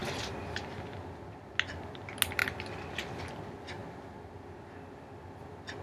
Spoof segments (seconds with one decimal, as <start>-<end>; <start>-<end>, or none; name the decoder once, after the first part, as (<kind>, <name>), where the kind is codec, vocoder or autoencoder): none